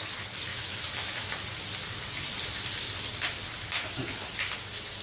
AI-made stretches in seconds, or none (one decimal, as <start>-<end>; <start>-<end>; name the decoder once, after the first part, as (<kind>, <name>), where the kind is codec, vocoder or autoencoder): 0.5-1.3 (autoencoder, DAC-VAE)